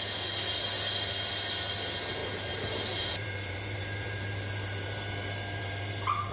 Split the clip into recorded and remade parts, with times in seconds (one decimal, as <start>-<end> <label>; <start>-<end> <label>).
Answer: 0.0-2.2 recorded; 2.2-6.3 remade